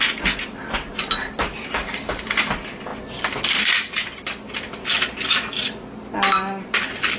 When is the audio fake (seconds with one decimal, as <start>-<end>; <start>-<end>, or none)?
none